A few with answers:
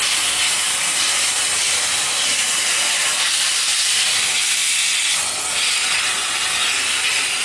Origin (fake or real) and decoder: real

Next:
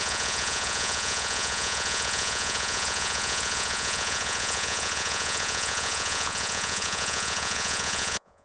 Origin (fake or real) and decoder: fake, vocoder, Vocos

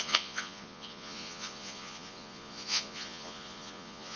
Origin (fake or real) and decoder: fake, vocoder, Vocos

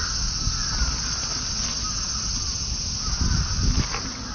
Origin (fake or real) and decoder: real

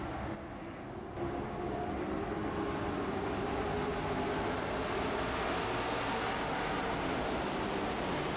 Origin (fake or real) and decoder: real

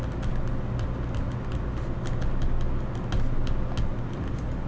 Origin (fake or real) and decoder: real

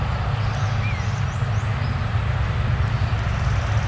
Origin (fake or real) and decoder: real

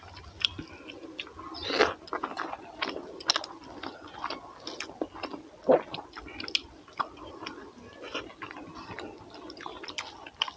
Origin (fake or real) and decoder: real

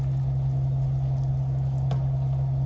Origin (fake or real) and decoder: real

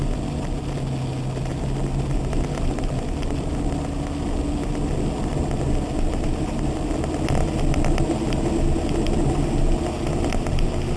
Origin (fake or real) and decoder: real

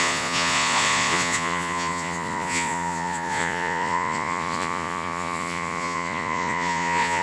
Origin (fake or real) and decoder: fake, vocoder, Vocos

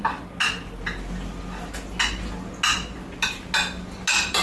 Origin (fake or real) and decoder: real